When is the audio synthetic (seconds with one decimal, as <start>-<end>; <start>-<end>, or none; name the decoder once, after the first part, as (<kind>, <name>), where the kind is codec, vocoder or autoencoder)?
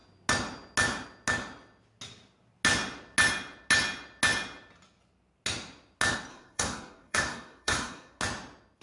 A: 6.3-8.2 (codec, SNAC)